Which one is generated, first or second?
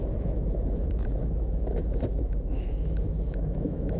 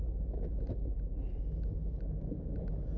first